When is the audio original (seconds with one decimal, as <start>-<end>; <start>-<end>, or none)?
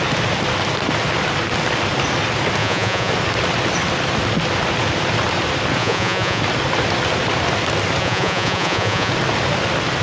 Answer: 0.0-2.6; 3.1-5.8; 6.4-8.0; 9.1-10.0